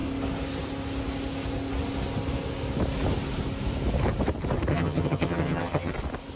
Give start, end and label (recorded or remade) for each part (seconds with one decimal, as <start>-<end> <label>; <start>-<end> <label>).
0.0-4.7 recorded; 4.7-5.9 remade; 5.9-6.4 recorded